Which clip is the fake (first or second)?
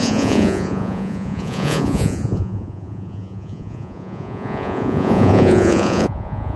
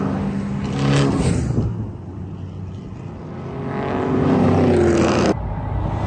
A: first